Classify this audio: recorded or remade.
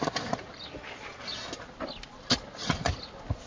recorded